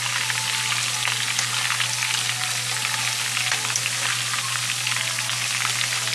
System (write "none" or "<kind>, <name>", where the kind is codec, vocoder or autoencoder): none